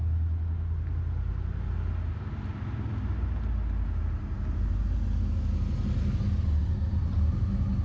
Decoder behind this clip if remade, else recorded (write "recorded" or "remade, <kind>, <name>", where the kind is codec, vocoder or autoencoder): recorded